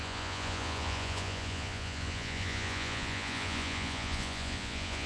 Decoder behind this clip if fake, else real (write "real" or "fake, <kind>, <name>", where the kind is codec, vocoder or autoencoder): fake, vocoder, Vocos